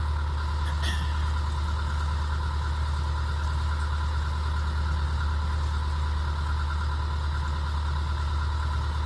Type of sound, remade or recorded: recorded